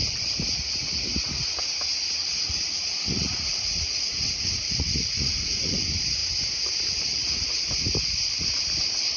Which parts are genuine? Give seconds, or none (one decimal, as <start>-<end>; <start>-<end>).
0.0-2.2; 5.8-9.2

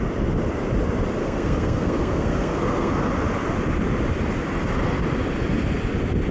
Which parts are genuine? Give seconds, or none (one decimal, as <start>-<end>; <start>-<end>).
0.0-1.2; 2.9-6.3

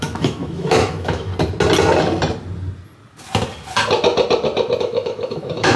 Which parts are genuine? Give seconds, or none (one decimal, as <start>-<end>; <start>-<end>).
1.3-4.8